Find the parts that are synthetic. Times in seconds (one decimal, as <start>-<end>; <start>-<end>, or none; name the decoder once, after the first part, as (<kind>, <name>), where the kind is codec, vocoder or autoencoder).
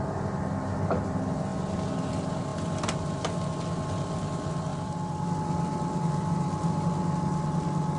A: 4.7-7.0 (vocoder, BigVGAN v2)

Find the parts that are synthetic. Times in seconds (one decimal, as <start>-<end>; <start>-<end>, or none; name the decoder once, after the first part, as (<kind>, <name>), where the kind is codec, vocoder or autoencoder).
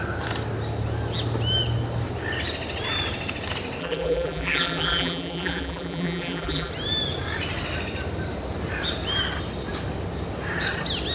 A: 3.8-6.7 (vocoder, BigVGAN v2)